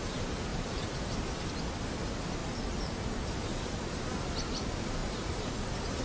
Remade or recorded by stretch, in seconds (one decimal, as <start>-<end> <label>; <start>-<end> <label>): 0.0-0.5 recorded; 0.5-1.2 remade; 1.2-2.4 recorded; 2.4-4.0 remade; 4.0-5.0 recorded; 5.0-6.0 remade